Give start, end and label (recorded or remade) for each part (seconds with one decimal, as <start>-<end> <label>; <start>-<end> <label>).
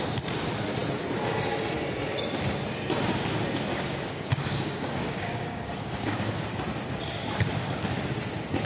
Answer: 0.0-3.7 recorded; 3.7-6.4 remade; 6.4-8.7 recorded